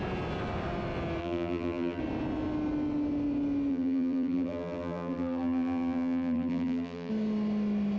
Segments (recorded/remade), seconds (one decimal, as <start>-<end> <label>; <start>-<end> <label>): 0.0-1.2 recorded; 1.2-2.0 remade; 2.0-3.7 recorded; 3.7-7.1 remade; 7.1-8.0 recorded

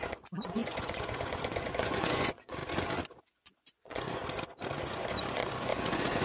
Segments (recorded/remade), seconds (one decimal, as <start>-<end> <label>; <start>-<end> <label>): 0.0-2.6 remade; 2.6-3.3 recorded; 3.3-4.2 remade; 4.2-4.8 recorded; 4.8-6.2 remade

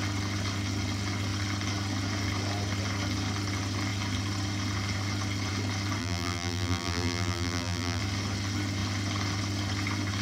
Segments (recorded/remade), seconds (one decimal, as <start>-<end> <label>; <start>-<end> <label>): 0.0-6.0 recorded; 6.0-8.0 remade; 8.0-10.2 recorded

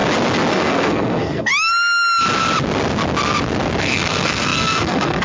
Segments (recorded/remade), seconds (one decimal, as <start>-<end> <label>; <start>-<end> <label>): 0.0-0.5 recorded; 0.5-1.5 remade; 1.5-3.8 recorded; 3.8-5.2 remade

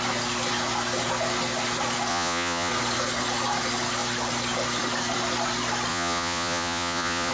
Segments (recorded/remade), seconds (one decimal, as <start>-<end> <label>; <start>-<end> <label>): 0.0-2.1 recorded; 2.1-2.7 remade; 2.7-5.9 recorded; 5.9-7.3 remade